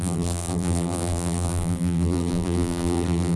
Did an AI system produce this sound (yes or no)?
yes